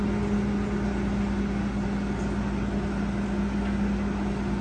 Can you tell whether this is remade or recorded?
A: recorded